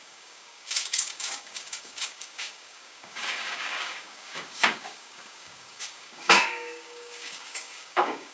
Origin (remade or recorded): remade